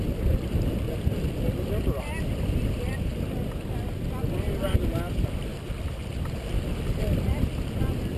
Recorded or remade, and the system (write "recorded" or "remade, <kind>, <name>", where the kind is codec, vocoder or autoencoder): recorded